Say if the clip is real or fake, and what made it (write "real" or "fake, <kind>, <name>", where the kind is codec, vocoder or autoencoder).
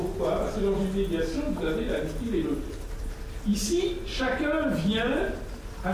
real